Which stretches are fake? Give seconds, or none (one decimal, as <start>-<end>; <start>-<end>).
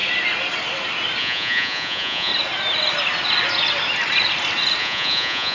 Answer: 1.2-2.3; 4.8-5.5